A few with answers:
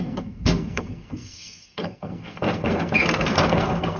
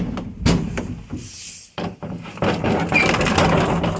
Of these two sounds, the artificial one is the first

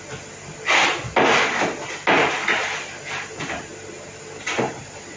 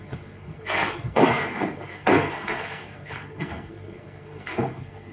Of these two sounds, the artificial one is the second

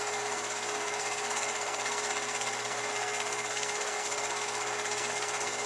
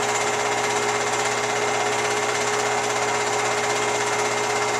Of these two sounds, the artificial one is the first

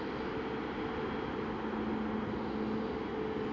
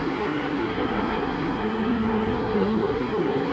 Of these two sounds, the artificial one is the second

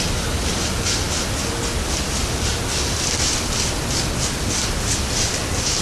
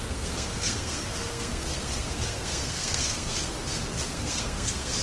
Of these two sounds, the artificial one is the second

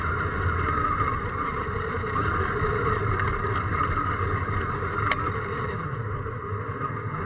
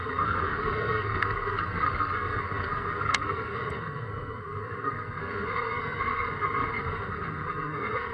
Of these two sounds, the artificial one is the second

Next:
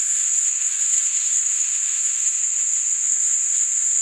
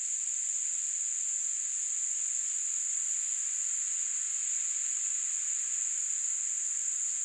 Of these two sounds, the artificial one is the first